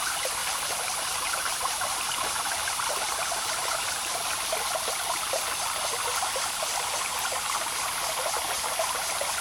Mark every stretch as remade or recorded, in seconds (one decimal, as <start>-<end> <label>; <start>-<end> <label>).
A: 0.0-0.4 recorded; 0.4-4.4 remade; 4.4-9.4 recorded

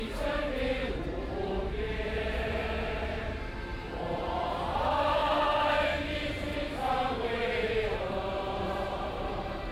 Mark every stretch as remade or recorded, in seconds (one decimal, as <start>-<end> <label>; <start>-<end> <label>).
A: 0.0-5.2 remade; 5.2-7.4 recorded; 7.4-9.7 remade

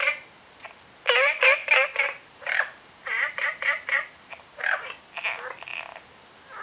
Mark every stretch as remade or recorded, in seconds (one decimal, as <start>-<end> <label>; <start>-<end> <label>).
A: 0.0-1.6 recorded; 1.6-4.9 remade; 4.9-6.6 recorded

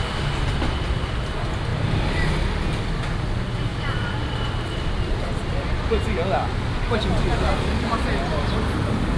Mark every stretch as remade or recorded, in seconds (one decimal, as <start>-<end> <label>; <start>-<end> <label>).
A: 0.0-1.7 recorded; 1.7-2.3 remade; 2.3-3.7 recorded; 3.7-4.5 remade; 4.5-9.2 recorded